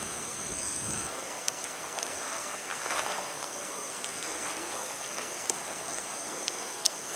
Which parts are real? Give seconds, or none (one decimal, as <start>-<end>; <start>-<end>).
none